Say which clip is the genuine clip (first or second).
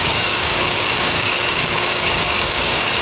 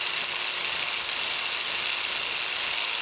second